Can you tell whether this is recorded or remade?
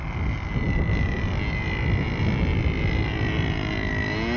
recorded